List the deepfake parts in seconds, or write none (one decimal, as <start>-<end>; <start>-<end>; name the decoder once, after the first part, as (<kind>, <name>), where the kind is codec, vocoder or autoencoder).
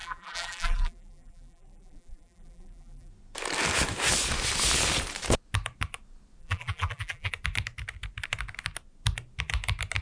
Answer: 0.0-3.1 (vocoder, BigVGAN v2); 6.4-7.3